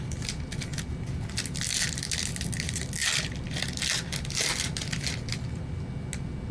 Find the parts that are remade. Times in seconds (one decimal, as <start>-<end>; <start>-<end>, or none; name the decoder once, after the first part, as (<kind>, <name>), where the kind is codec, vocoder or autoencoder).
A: none